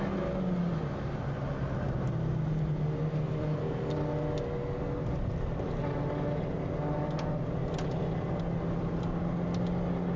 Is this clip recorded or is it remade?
recorded